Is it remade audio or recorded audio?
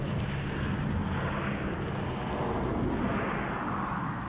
recorded